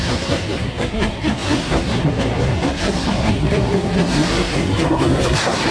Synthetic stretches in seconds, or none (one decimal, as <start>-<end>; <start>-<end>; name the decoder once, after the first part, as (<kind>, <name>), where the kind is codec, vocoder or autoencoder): 0.0-5.7 (codec, SNAC)